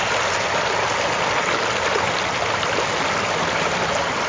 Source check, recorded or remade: recorded